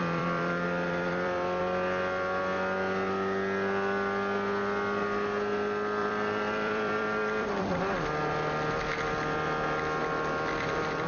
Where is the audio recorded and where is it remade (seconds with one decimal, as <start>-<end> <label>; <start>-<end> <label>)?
0.0-1.6 remade; 1.6-6.0 recorded; 6.0-8.1 remade; 8.1-11.1 recorded